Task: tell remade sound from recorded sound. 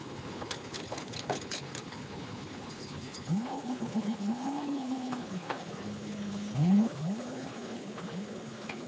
remade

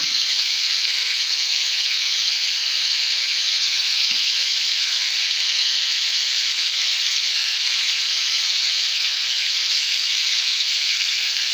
remade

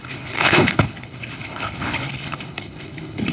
remade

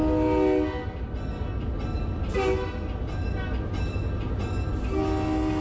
recorded